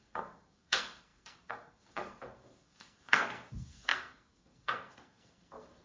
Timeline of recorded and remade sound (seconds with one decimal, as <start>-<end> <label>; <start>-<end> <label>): 0.0-5.8 remade